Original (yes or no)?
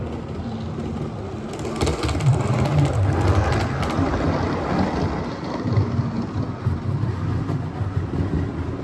yes